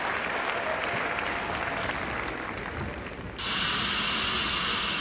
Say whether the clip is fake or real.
real